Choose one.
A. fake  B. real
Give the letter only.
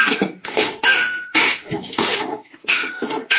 A